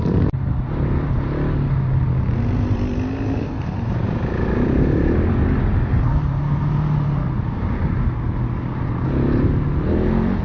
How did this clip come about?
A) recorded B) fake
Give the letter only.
A